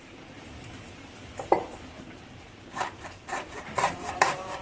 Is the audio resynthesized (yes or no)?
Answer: yes